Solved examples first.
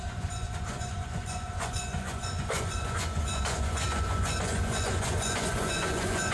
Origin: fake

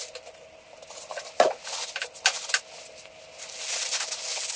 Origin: real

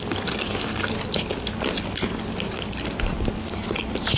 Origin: real